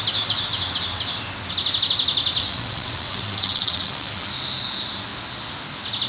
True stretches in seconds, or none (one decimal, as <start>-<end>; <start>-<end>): 0.0-2.4; 4.3-6.1